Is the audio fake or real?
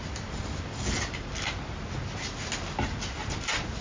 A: real